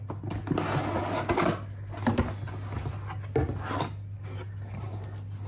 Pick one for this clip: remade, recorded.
recorded